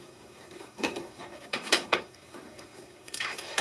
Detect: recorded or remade remade